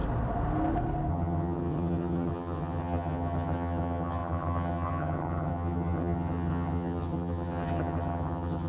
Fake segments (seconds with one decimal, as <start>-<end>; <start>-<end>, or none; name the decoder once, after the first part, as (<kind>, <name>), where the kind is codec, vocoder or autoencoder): 1.1-8.7 (vocoder, HiFi-GAN)